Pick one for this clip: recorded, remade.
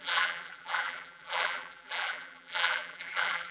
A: remade